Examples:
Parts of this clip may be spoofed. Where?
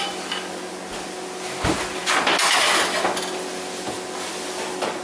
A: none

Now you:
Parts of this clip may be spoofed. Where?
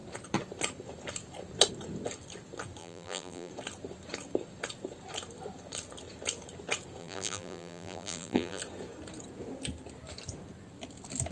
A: 2.8-3.5 (vocoder, BigVGAN v2); 7.0-8.6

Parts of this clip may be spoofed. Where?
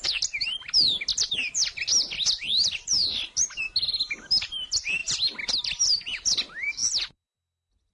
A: 0.0-6.8 (vocoder, BigVGAN v2)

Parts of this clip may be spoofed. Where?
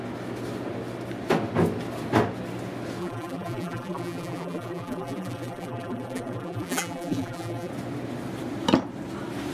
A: 3.0-7.7 (vocoder, BigVGAN v2)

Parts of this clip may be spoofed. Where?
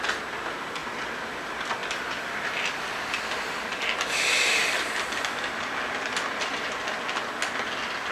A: none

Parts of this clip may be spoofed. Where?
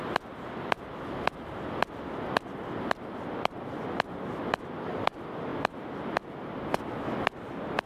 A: none